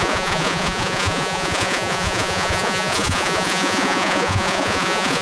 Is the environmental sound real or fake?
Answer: fake